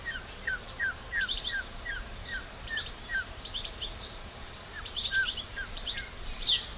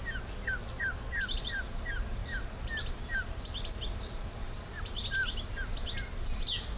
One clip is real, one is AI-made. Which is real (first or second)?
second